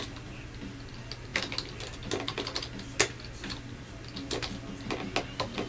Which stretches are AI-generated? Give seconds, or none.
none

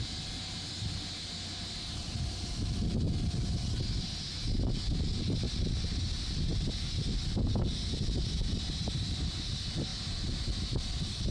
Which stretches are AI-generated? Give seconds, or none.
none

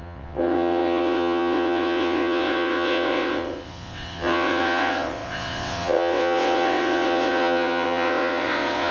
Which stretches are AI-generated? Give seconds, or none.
0.0-8.9 (vocoder, WaveNeXt)

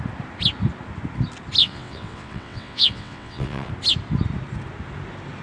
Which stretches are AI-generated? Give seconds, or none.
1.6-3.7 (vocoder, WaveNeXt)

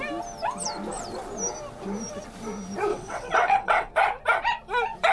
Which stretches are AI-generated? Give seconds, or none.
2.9-3.9 (vocoder, WaveNeXt)